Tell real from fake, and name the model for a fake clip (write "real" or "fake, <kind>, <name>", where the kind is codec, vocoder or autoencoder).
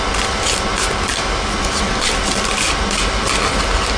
real